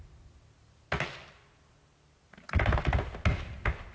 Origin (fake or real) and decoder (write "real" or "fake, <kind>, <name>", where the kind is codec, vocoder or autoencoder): real